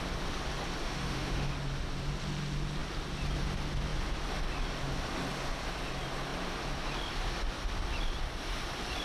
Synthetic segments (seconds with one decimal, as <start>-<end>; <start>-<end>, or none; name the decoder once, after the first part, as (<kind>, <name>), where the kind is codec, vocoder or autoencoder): 0.8-1.5 (autoencoder, DAC-VAE)